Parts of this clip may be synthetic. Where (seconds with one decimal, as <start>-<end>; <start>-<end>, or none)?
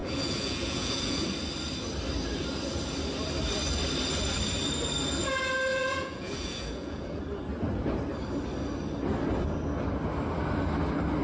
0.0-1.2; 5.7-7.2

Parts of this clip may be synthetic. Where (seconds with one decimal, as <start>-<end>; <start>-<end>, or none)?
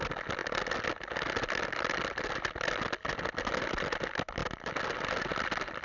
none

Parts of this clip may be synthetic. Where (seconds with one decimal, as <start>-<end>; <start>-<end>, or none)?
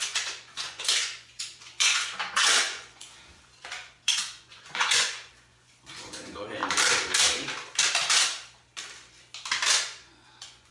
0.0-6.6; 9.7-10.7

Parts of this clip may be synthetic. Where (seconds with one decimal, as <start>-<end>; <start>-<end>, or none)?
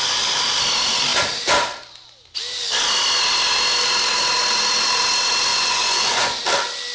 5.5-6.4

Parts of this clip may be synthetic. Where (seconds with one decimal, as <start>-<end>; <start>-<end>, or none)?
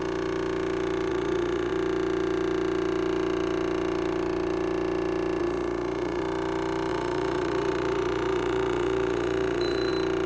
1.1-1.7; 5.4-6.2; 6.9-9.9